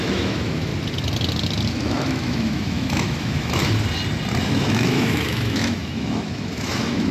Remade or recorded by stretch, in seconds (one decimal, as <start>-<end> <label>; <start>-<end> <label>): 0.0-0.7 remade; 0.7-1.7 recorded; 1.7-3.6 remade; 3.6-4.4 recorded; 4.4-7.1 remade